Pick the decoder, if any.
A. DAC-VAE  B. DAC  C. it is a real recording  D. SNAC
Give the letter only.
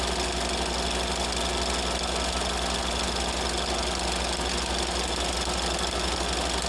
C